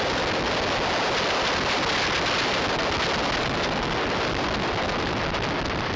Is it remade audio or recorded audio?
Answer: recorded